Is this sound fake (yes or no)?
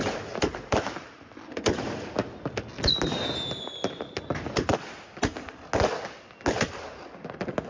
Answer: no